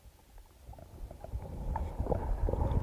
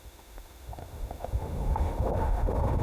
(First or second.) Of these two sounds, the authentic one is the first